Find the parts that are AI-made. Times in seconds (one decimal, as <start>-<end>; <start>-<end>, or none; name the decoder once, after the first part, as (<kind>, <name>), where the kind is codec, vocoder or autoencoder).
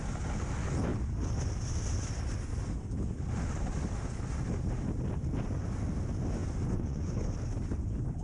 6.4-7.3 (vocoder, Vocos)